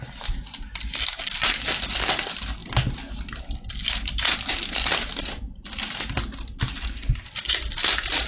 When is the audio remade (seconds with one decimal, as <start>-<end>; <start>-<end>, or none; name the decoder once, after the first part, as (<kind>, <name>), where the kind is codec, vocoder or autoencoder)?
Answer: none